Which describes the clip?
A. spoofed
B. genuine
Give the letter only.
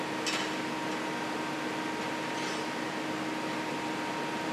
B